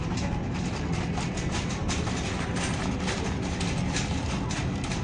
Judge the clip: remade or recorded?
recorded